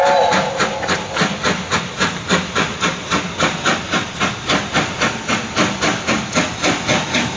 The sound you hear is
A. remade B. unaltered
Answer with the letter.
B